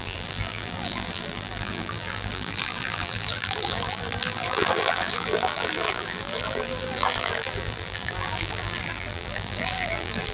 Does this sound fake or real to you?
fake